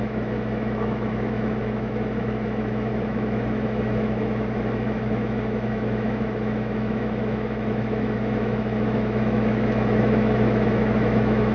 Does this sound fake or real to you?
fake